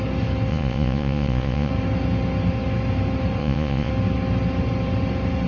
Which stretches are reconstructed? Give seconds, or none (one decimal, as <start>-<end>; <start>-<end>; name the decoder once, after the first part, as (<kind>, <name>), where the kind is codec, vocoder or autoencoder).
0.5-1.7 (vocoder, Vocos); 3.4-3.9